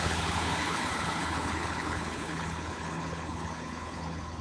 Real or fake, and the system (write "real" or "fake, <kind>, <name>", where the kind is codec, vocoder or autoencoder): fake, codec, HILCodec